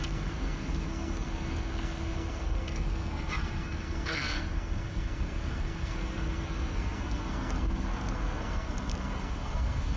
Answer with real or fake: fake